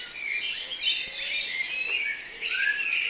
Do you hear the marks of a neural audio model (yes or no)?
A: no